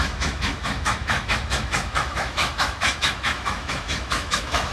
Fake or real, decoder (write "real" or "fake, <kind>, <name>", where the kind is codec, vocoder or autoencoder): fake, autoencoder, DAC-VAE